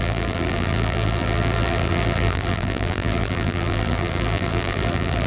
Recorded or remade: remade